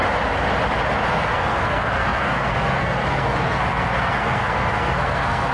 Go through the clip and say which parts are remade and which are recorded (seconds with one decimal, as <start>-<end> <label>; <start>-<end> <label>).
0.0-1.1 recorded; 1.1-5.5 remade